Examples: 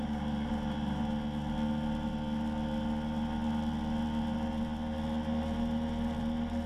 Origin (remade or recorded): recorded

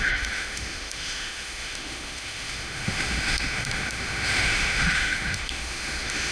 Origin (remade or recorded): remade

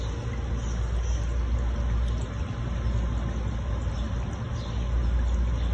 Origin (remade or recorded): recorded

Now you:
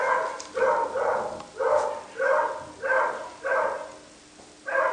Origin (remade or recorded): recorded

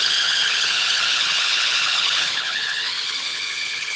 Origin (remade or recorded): remade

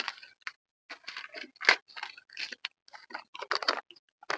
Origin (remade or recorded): recorded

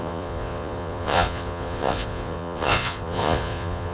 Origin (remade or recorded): remade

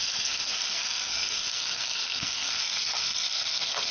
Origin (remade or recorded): remade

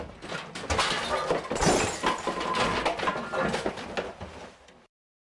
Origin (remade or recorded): recorded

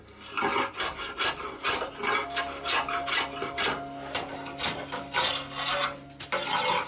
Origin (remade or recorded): recorded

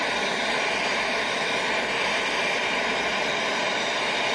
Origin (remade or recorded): recorded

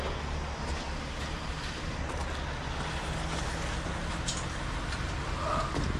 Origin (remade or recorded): recorded